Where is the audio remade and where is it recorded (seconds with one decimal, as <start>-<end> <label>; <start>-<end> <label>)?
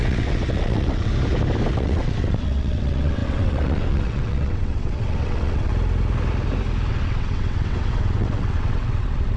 0.0-1.1 remade; 1.1-1.7 recorded; 1.7-5.7 remade; 5.7-6.9 recorded; 6.9-9.4 remade